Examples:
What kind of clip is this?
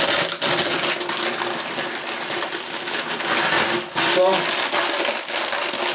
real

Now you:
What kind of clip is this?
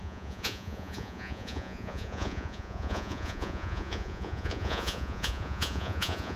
fake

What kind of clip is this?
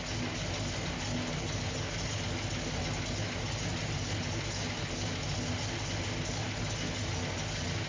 real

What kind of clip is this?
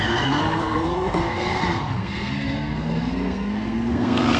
fake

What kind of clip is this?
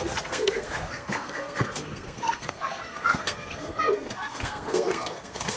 fake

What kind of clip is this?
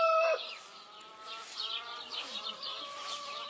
real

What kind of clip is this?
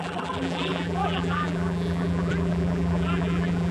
fake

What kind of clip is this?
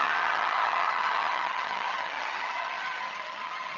fake